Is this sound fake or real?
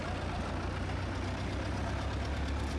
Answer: real